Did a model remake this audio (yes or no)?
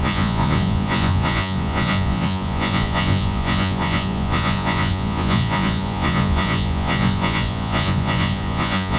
yes